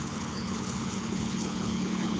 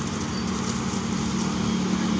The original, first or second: second